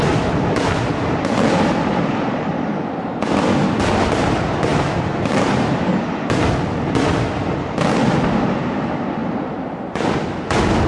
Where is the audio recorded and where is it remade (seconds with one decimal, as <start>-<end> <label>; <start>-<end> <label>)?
0.0-1.8 recorded; 1.8-2.5 remade; 2.5-4.7 recorded; 4.7-6.0 remade; 6.0-9.2 recorded; 9.2-9.8 remade; 9.8-10.9 recorded

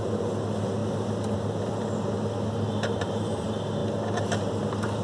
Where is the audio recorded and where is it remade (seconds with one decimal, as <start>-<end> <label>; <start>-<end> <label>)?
0.0-5.0 recorded

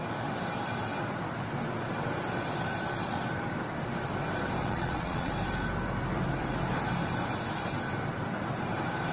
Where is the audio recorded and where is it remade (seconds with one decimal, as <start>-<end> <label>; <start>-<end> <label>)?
0.0-4.6 recorded; 4.6-5.3 remade; 5.3-9.1 recorded

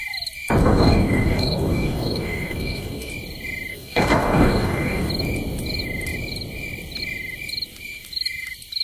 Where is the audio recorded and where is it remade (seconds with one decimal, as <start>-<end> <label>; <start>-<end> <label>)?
0.0-0.6 recorded; 0.6-3.1 remade; 3.1-3.7 recorded; 3.7-5.1 remade; 5.1-8.8 recorded

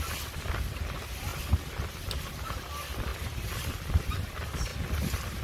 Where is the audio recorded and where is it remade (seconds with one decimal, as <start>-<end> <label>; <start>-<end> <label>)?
0.0-3.1 recorded; 3.1-4.0 remade; 4.0-4.7 recorded; 4.7-5.4 remade